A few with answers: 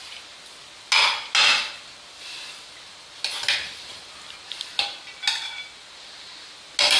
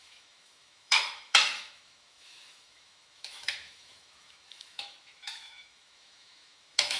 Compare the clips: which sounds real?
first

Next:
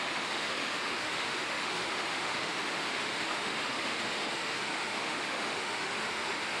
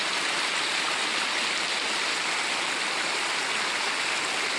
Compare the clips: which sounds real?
second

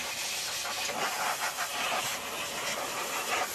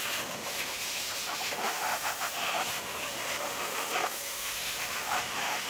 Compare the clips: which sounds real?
first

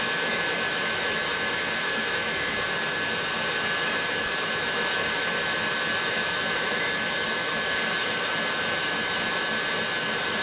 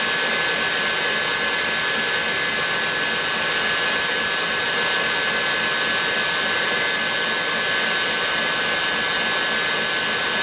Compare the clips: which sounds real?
second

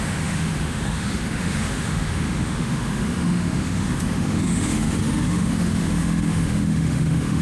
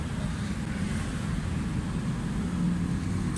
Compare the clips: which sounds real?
second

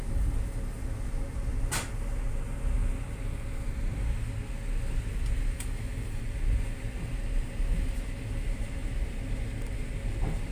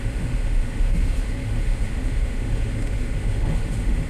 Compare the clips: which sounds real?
first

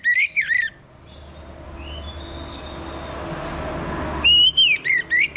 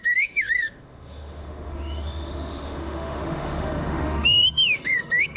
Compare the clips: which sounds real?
first